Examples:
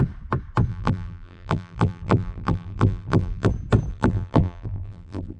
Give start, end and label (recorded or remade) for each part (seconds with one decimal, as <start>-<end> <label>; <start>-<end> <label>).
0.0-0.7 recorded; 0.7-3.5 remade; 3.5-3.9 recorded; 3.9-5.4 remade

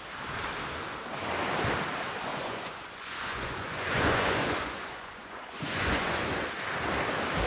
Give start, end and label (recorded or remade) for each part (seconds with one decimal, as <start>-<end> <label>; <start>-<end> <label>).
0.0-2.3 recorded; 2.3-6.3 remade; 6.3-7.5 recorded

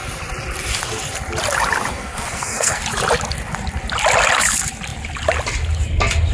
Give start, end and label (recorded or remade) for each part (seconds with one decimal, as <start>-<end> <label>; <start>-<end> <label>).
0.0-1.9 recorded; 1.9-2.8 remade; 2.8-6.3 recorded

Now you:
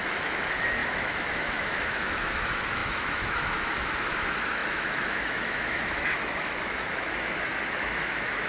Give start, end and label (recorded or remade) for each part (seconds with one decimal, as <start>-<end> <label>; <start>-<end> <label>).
0.0-8.5 remade